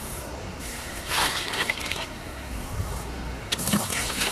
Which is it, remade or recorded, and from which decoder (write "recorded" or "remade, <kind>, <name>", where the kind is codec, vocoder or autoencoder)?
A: remade, codec, SNAC